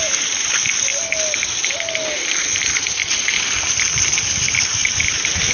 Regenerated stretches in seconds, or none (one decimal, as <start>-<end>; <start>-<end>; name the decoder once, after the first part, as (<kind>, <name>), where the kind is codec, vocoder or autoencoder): none